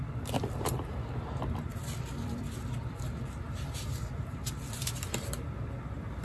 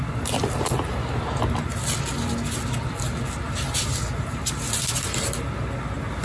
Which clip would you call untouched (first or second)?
second